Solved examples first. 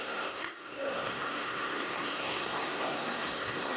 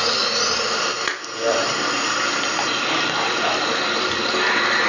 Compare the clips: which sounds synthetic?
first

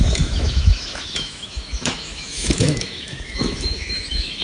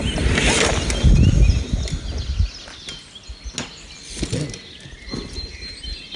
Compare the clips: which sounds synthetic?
first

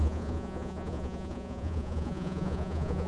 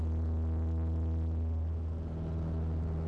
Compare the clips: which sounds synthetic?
first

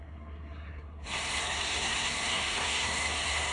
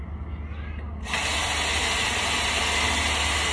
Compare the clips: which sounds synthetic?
first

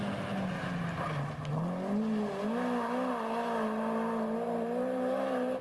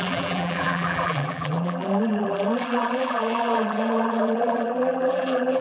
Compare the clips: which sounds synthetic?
second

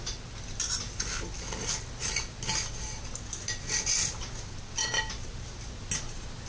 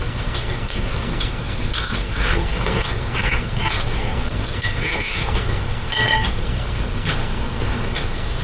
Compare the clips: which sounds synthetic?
second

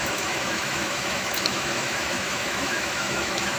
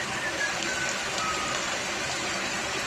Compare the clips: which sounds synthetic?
first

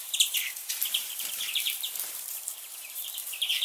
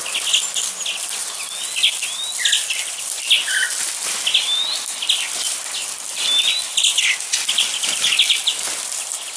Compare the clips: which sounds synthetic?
first